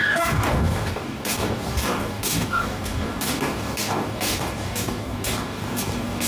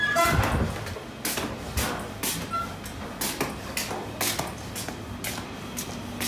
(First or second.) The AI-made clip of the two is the first